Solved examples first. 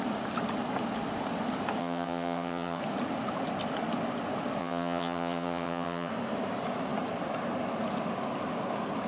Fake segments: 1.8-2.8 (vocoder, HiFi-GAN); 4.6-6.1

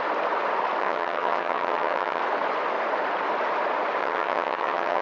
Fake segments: 0.8-2.2 (vocoder, HiFi-GAN); 4.0-5.0